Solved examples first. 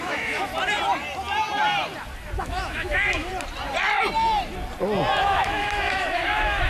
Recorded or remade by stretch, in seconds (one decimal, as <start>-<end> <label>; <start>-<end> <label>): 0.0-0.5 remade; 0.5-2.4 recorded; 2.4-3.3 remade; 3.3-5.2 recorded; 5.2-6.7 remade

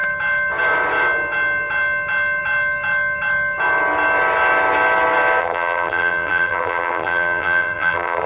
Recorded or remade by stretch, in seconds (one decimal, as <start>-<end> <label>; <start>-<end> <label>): 0.0-5.4 recorded; 5.4-8.3 remade

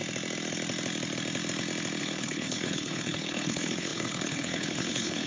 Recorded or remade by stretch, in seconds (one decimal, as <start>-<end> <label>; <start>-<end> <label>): 0.0-2.0 recorded; 2.0-5.3 remade

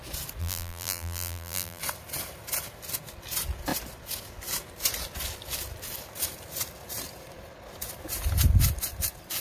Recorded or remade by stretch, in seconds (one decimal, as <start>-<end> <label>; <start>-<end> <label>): 0.0-0.4 recorded; 0.4-1.8 remade; 1.8-9.4 recorded

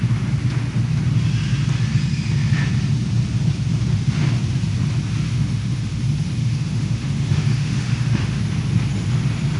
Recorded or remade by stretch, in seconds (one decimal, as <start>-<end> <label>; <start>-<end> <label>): 0.0-5.3 recorded; 5.3-6.0 remade; 6.0-6.4 recorded; 6.4-8.4 remade; 8.4-9.6 recorded

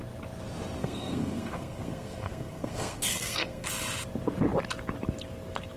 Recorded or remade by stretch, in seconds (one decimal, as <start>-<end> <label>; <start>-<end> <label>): 0.0-0.8 recorded; 0.8-3.7 remade; 3.7-5.8 recorded

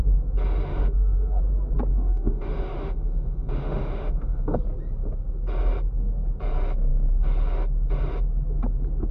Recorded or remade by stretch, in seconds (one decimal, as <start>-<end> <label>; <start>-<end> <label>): 0.0-0.7 recorded; 0.7-1.4 remade; 1.4-1.9 recorded; 1.9-4.6 remade; 4.6-9.1 recorded

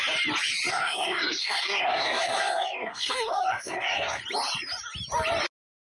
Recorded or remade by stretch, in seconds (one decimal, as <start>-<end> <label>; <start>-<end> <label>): 0.0-0.7 recorded; 0.7-4.2 remade; 4.2-5.8 recorded